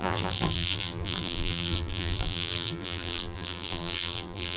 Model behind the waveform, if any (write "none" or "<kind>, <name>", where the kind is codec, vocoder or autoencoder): vocoder, BigVGAN v2